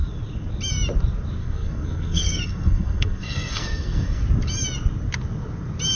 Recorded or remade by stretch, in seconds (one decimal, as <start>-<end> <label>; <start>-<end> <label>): 0.0-1.4 recorded; 1.4-4.2 remade; 4.2-5.9 recorded